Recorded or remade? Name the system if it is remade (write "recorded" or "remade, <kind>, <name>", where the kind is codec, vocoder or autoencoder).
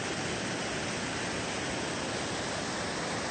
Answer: recorded